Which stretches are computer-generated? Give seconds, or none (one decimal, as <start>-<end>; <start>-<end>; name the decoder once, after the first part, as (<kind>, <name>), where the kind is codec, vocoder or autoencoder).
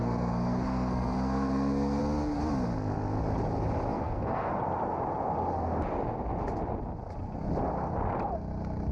0.0-2.0 (codec, SNAC); 3.9-4.5